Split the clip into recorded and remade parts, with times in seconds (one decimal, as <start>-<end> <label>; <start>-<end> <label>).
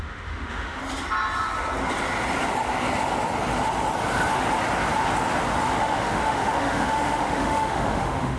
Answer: 0.0-0.8 remade; 0.8-5.8 recorded; 5.8-8.4 remade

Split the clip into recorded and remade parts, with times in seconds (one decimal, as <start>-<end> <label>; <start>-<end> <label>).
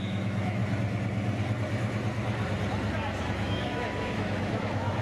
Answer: 0.0-0.6 remade; 0.6-3.2 recorded; 3.2-5.0 remade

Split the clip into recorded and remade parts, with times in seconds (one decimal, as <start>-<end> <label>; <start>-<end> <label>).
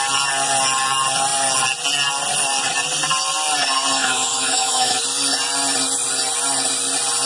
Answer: 0.0-4.0 recorded; 4.0-5.0 remade; 5.0-7.3 recorded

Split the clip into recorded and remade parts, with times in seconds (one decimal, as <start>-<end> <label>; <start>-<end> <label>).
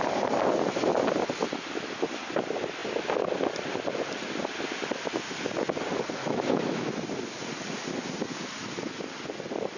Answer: 0.0-6.2 recorded; 6.2-6.9 remade; 6.9-9.8 recorded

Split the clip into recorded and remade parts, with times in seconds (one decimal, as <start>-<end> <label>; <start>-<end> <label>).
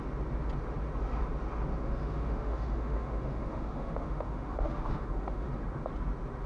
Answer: 0.0-1.7 recorded; 1.7-5.5 remade; 5.5-6.5 recorded